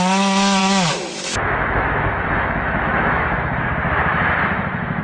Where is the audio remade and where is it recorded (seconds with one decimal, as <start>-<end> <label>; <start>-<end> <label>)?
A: 0.0-0.6 recorded; 0.6-3.6 remade; 3.6-4.1 recorded; 4.1-5.0 remade